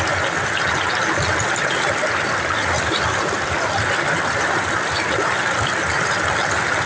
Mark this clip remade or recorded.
recorded